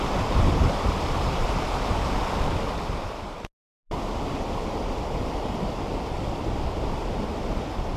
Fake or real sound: real